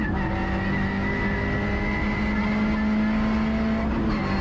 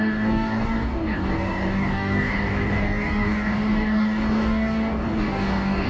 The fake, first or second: second